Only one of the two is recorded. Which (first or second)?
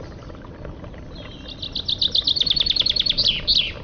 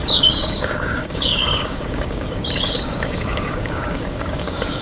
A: first